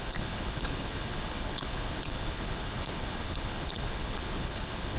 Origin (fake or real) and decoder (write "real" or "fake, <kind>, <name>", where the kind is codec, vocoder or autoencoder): fake, codec, HILCodec